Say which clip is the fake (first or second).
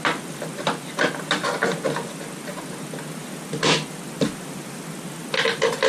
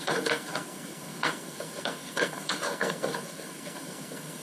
second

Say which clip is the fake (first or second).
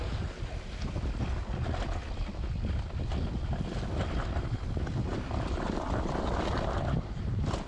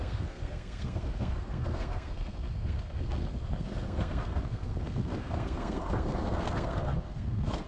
second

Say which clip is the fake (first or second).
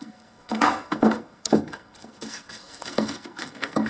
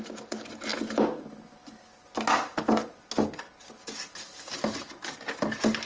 first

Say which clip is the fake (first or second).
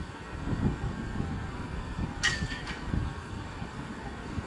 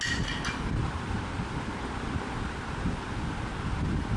first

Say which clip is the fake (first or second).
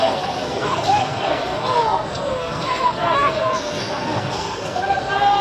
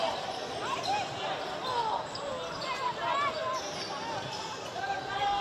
first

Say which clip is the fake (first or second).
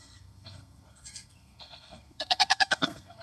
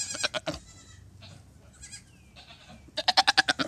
first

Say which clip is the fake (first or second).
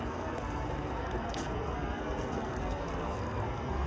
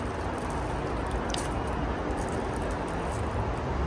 first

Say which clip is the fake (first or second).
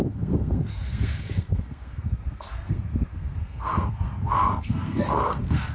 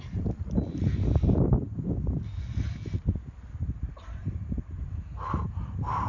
first